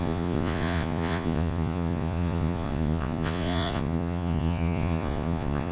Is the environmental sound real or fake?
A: fake